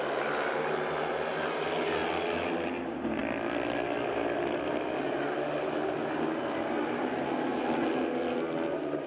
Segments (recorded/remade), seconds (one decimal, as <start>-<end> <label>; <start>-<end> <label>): 0.0-2.0 recorded; 2.0-2.6 remade; 2.6-9.1 recorded